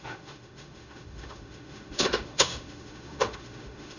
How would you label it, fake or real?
fake